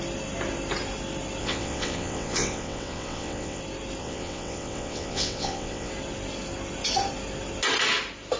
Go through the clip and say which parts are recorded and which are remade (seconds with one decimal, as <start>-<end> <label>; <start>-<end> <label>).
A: 0.0-1.4 recorded; 1.4-3.6 remade; 3.6-4.0 recorded; 4.0-5.9 remade; 5.9-8.4 recorded

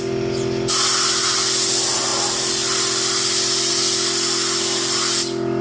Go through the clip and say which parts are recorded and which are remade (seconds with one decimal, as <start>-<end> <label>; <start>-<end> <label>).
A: 0.0-5.6 recorded

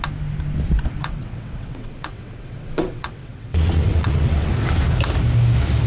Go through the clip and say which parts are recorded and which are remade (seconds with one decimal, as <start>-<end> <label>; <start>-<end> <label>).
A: 0.0-1.0 recorded; 1.0-4.5 remade; 4.5-5.9 recorded